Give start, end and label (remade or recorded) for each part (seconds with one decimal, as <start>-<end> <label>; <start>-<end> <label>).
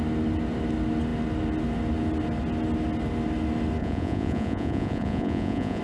0.0-3.8 recorded; 3.8-5.8 remade